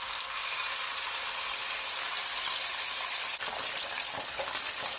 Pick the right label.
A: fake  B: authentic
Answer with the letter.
B